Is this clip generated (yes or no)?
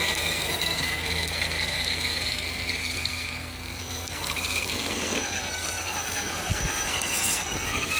yes